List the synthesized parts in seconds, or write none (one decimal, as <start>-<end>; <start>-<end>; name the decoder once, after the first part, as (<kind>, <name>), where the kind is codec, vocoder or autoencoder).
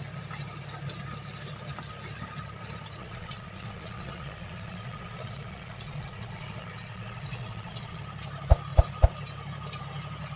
3.0-8.0 (vocoder, Vocos)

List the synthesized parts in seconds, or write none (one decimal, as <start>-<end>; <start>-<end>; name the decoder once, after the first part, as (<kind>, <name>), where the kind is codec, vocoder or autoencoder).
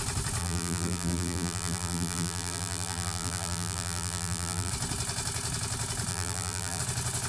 0.4-4.7 (vocoder, BigVGAN v2); 6.1-6.8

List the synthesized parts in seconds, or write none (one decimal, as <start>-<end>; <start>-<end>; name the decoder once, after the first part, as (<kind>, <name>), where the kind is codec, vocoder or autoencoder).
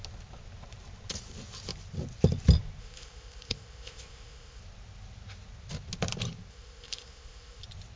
2.8-4.6 (codec, ZipCodec); 6.5-7.6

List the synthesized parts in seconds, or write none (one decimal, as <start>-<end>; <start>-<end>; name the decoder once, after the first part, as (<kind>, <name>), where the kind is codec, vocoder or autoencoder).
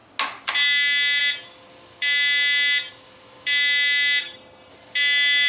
4.2-4.7 (codec, DAC)